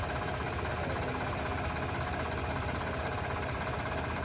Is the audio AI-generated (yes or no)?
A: no